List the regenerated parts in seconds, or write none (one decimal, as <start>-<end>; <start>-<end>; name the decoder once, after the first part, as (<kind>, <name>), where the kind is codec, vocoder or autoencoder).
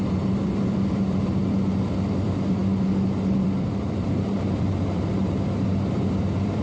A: 0.0-6.6 (vocoder, BigVGAN v2)